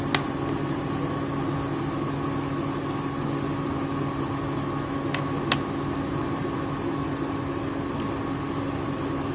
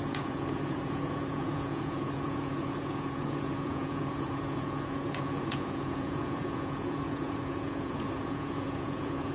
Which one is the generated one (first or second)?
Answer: second